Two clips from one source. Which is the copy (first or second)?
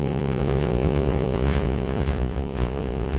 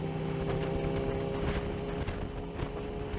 first